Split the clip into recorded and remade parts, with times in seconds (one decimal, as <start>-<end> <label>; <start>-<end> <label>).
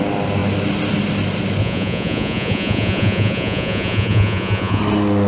0.0-1.6 recorded; 1.6-4.8 remade; 4.8-5.3 recorded